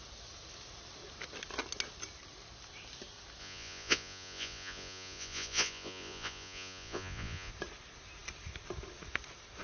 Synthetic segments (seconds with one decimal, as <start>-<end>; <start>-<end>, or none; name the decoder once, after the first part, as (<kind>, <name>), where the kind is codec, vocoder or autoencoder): 3.4-7.5 (vocoder, Vocos)